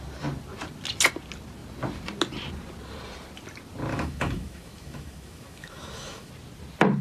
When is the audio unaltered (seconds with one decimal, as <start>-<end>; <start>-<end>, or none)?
0.0-3.9; 6.3-7.0